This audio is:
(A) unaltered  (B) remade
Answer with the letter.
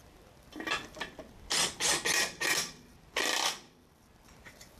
B